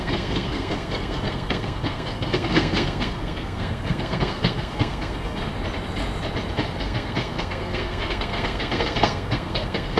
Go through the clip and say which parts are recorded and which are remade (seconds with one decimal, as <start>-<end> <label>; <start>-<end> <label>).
0.0-5.5 remade; 5.5-6.8 recorded; 6.8-10.0 remade